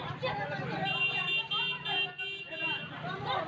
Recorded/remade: recorded